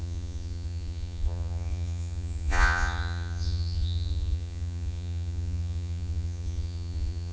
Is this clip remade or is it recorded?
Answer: remade